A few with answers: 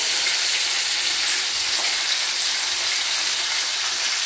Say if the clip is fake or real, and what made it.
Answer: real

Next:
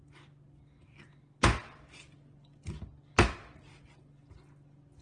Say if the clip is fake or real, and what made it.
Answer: real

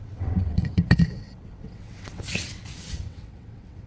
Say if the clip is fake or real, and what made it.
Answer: fake, vocoder, WaveNeXt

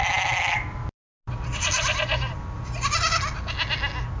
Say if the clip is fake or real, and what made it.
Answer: real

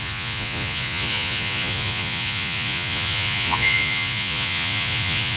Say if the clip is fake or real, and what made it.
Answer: fake, vocoder, Vocos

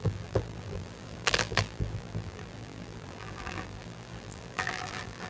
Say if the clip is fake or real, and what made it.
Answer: fake, vocoder, BigVGAN v2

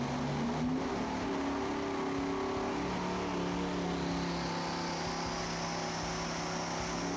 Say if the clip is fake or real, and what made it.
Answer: real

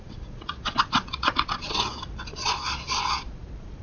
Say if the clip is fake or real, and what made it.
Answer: fake, vocoder, Vocos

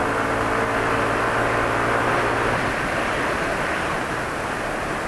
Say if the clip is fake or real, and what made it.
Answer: real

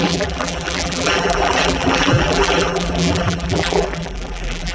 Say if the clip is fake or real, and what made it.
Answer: fake, vocoder, BigVGAN v2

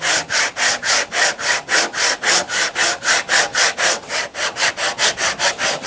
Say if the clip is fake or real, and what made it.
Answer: real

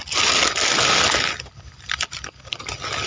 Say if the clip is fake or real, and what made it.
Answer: real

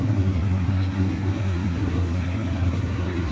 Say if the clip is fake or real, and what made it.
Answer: fake, codec, SNAC